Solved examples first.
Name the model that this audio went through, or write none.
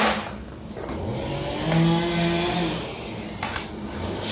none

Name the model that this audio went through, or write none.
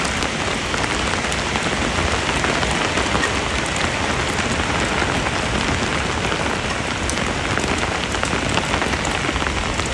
none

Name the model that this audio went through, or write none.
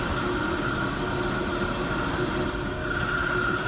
none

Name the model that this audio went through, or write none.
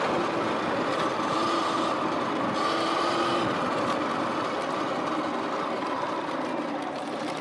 none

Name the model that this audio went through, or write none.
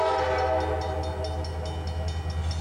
none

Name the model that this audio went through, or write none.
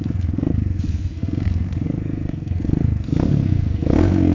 codec, SNAC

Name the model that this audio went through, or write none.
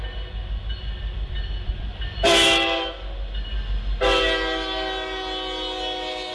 none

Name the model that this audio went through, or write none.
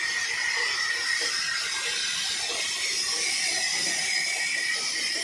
none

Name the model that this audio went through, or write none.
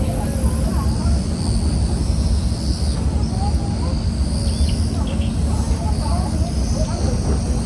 none